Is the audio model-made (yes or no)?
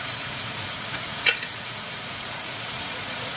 yes